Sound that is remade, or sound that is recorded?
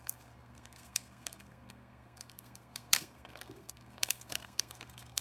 remade